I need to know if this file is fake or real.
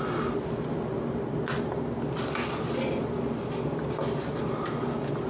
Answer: real